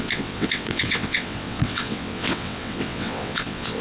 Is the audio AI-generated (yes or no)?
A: yes